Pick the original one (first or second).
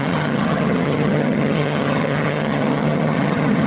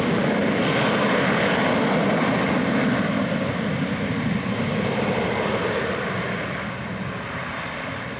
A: second